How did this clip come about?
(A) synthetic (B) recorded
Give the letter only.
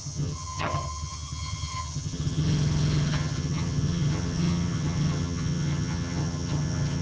A